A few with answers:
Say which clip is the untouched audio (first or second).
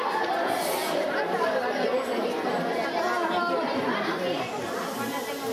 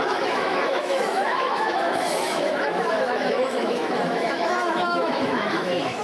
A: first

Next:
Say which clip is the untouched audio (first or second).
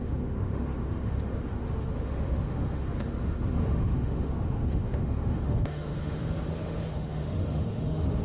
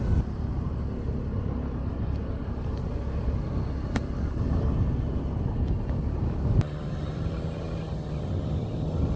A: second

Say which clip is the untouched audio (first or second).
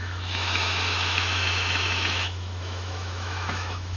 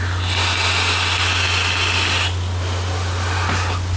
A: second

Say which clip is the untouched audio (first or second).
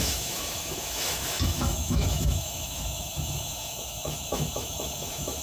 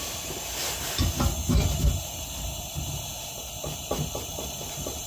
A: second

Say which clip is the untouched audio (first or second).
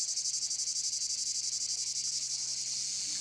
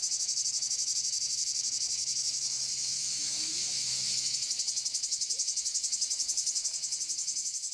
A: first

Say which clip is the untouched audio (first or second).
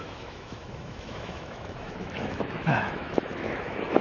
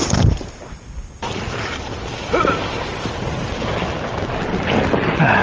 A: second